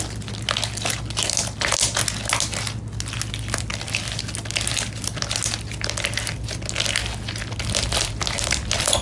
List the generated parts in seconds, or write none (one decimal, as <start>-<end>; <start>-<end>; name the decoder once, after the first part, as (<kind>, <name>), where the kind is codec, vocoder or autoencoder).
none